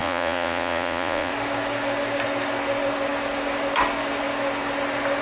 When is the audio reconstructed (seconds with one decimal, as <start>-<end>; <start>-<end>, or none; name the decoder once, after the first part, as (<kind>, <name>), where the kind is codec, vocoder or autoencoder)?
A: 0.0-1.3 (vocoder, Vocos)